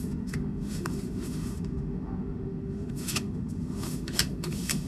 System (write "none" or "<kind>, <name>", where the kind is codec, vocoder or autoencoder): autoencoder, DAC-VAE